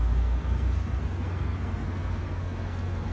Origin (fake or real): fake